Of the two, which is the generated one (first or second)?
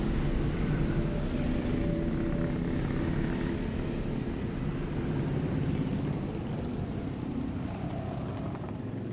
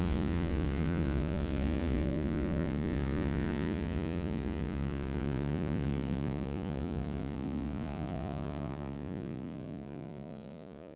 second